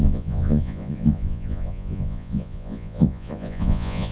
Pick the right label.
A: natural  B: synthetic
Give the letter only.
B